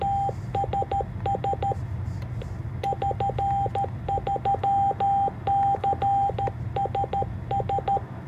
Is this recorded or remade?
recorded